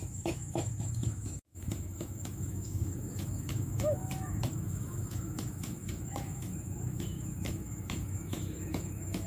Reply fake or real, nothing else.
fake